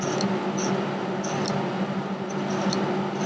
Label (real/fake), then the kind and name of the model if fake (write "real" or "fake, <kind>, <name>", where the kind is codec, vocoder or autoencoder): real